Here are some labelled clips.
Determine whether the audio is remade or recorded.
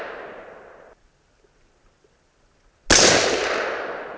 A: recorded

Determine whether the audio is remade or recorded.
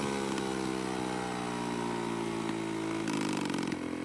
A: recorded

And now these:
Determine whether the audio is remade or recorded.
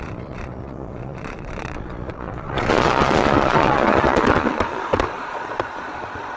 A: remade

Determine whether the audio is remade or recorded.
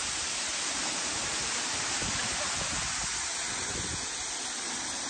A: recorded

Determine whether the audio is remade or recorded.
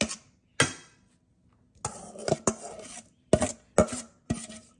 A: recorded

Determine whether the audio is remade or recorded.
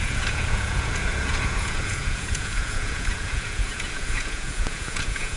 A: remade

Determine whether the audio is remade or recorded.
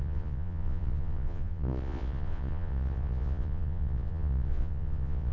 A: remade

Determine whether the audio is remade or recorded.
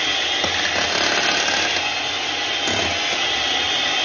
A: recorded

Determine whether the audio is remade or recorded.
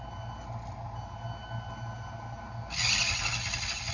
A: recorded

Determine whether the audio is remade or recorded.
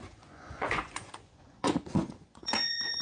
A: remade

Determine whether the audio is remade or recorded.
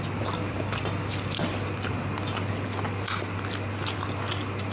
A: recorded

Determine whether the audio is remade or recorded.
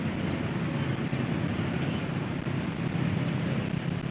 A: recorded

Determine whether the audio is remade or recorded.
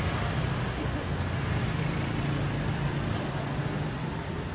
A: recorded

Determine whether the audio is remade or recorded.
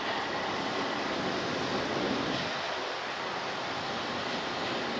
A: recorded